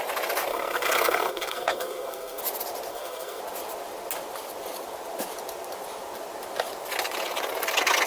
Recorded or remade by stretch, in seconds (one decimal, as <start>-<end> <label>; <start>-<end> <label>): 0.0-0.5 recorded; 0.5-2.4 remade; 2.4-2.9 recorded; 2.9-3.4 remade; 3.4-8.1 recorded